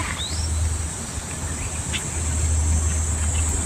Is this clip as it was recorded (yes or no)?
yes